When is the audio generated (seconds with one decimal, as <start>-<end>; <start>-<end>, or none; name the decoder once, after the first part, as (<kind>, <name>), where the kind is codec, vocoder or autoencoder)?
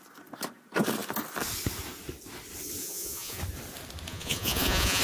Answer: 2.8-3.4 (vocoder, Vocos); 4.1-5.0